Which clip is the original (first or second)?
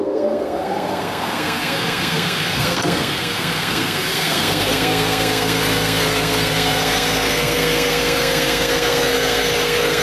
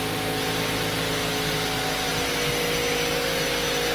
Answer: second